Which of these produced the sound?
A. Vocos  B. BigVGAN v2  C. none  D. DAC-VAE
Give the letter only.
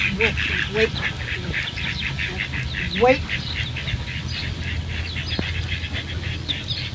C